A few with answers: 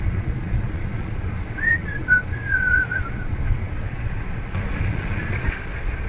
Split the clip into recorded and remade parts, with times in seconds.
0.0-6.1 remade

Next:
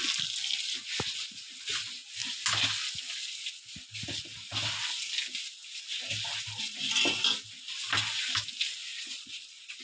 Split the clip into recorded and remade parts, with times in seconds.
0.0-8.9 recorded; 8.9-9.8 remade